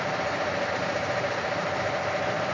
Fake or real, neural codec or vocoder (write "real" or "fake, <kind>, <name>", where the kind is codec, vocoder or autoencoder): fake, vocoder, BigVGAN v2